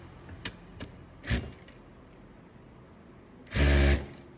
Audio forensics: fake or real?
real